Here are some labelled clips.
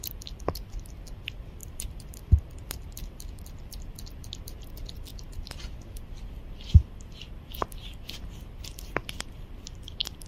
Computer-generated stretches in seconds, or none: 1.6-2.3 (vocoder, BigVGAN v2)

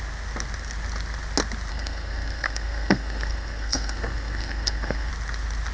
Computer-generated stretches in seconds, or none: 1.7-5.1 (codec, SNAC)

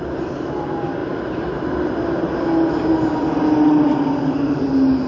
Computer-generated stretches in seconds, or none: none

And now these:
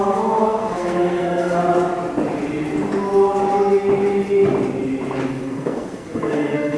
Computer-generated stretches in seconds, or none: 0.0-1.6 (codec, SNAC); 5.3-6.8

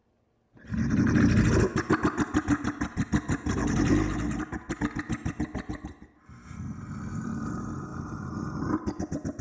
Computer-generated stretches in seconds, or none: none